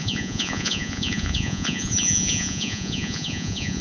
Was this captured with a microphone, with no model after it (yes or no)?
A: no